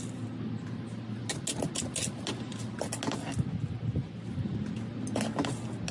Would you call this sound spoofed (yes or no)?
no